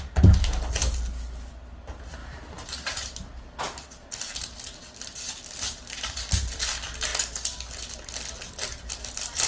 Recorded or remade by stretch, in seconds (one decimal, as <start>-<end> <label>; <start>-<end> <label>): 0.0-9.5 recorded